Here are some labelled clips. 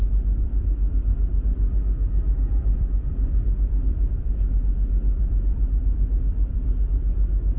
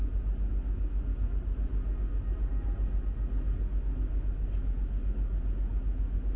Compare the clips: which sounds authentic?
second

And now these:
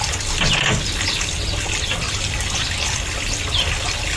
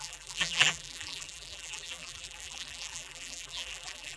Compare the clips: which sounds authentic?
first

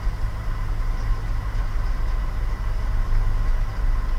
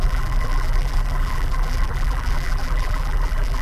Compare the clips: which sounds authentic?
first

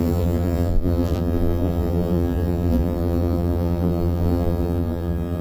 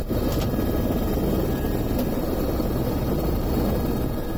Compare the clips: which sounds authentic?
second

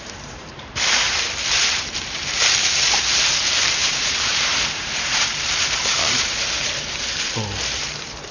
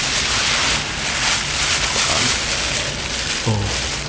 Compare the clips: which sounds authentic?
second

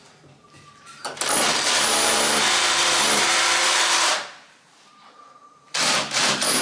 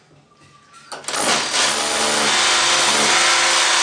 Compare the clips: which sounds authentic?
second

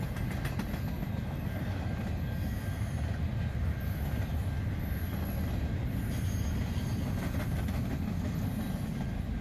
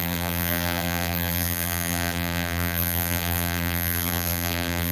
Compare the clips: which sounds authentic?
first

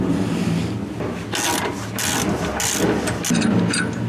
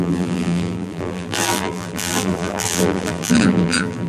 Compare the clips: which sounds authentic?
first